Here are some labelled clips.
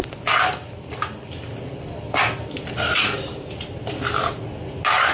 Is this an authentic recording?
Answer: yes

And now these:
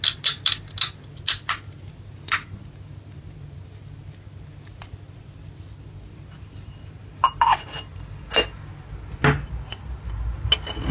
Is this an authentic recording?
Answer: yes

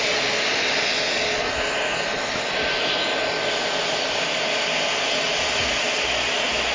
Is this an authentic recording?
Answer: yes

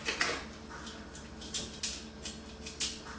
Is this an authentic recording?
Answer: yes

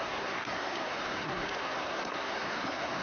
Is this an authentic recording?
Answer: no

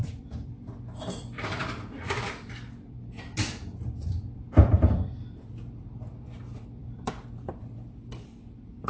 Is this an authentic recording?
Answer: no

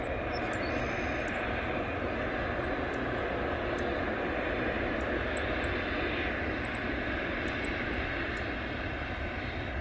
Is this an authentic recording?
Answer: yes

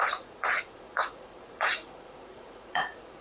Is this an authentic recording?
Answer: no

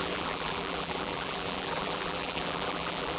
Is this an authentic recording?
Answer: no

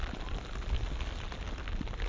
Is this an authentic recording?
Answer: yes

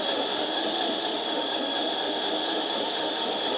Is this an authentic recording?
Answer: no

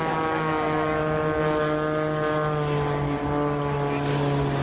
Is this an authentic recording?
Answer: yes